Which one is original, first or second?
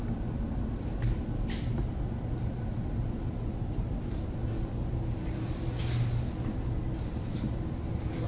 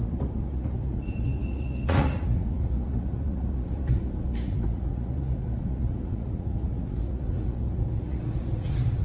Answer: first